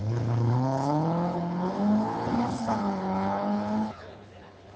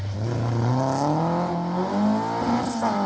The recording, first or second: second